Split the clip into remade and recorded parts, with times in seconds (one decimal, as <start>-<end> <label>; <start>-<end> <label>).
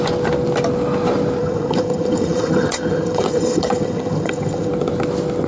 0.0-1.4 recorded; 1.4-4.7 remade; 4.7-5.5 recorded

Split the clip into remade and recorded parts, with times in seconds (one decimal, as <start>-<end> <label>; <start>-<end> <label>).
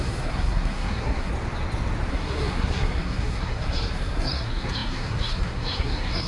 0.0-1.3 remade; 1.3-2.1 recorded; 2.1-6.3 remade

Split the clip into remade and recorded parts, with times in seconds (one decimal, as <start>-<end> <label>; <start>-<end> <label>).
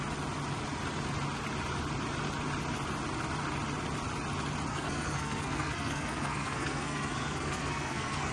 0.0-4.7 recorded; 4.7-8.3 remade